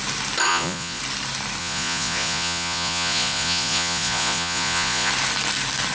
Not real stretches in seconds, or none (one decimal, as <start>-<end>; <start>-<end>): 0.5-1.0; 1.6-5.1